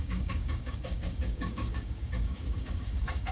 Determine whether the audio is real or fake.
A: fake